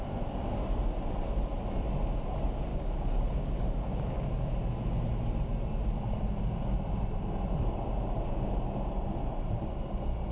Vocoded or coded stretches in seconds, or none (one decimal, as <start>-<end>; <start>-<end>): 2.7-4.3